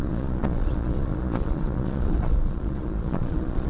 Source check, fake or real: fake